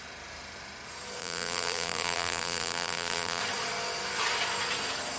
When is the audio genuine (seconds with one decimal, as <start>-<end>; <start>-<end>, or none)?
0.0-1.2; 3.4-5.2